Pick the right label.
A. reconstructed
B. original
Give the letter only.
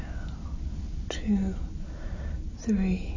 B